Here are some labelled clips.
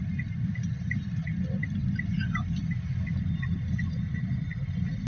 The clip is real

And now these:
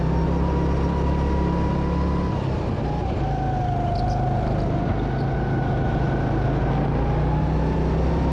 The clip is real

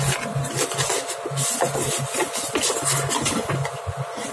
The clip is real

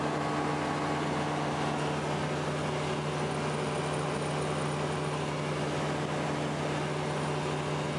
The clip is real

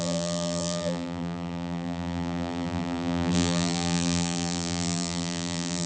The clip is fake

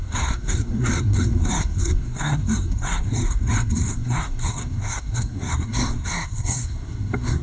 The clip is fake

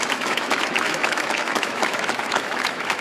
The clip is fake